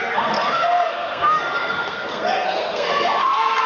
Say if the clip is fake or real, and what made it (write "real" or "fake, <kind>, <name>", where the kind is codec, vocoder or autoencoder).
fake, codec, SNAC